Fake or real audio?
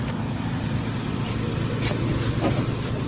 real